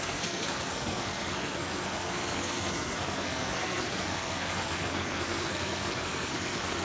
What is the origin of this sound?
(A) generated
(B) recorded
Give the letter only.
A